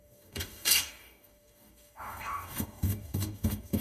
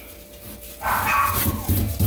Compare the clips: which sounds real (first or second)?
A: second